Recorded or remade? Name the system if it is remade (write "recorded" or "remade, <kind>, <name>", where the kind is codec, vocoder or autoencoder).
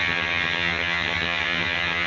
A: remade, vocoder, HiFi-GAN